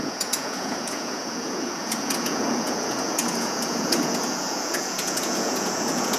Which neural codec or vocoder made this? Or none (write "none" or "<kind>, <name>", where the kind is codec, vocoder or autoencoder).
vocoder, Vocos